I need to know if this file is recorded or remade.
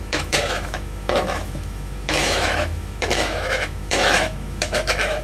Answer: remade